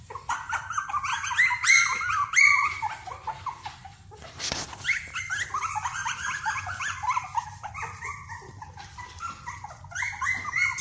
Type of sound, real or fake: fake